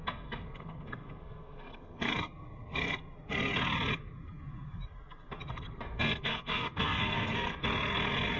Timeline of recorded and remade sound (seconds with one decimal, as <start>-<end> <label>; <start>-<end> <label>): 0.0-2.1 remade; 2.1-5.5 recorded; 5.5-7.6 remade; 7.6-8.4 recorded